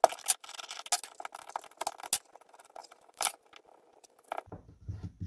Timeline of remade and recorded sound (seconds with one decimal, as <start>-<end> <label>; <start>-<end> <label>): 0.0-2.8 recorded; 2.8-3.5 remade; 3.5-5.3 recorded